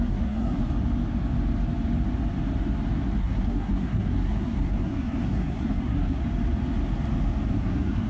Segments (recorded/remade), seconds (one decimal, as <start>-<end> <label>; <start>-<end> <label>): 0.0-0.6 remade; 0.6-3.2 recorded; 3.2-6.2 remade; 6.2-7.5 recorded; 7.5-8.1 remade